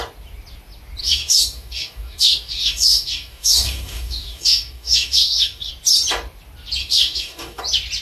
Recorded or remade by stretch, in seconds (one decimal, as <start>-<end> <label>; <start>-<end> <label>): 0.0-1.0 recorded; 1.0-5.7 remade; 5.7-6.8 recorded; 6.8-7.6 remade; 7.6-8.0 recorded